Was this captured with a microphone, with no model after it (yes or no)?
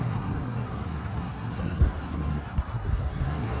no